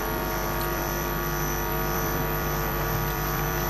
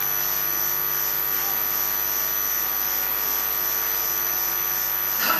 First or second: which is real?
second